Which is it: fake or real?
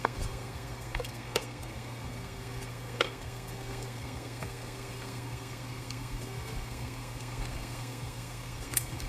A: fake